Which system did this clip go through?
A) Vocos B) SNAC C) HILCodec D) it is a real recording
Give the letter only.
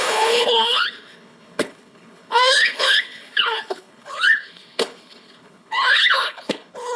C